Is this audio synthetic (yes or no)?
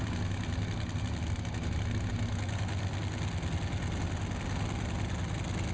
no